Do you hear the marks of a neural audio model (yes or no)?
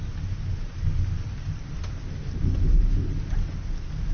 no